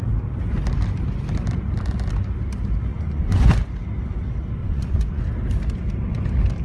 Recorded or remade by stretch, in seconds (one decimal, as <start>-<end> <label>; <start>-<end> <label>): 0.0-2.9 recorded; 2.9-3.5 remade; 3.5-4.6 recorded; 4.6-5.2 remade; 5.2-6.6 recorded